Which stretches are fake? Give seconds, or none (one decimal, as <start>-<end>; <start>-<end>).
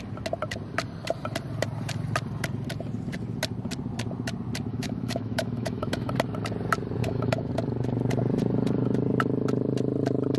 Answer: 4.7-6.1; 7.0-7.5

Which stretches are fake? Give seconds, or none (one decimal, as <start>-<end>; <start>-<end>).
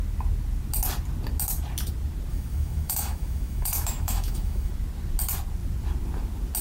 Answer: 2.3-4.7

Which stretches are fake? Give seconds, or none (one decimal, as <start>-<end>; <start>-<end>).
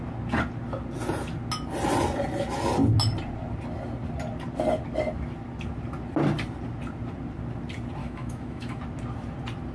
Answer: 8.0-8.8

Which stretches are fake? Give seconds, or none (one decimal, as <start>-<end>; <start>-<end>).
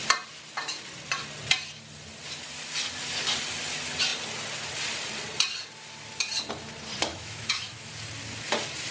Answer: 7.1-7.9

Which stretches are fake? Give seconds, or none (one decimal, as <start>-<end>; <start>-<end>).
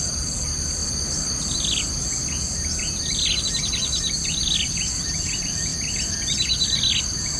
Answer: none